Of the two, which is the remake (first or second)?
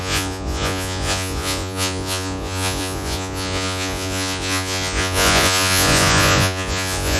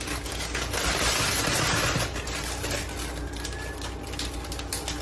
first